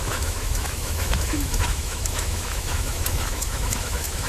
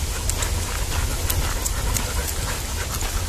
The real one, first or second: second